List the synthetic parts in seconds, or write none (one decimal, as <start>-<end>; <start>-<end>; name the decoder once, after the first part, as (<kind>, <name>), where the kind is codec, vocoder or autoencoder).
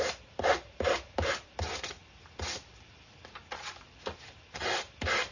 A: none